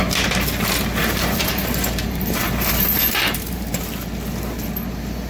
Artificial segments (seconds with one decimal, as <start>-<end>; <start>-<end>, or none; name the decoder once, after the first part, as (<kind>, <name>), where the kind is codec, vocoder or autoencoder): 1.0-3.8 (vocoder, BigVGAN v2)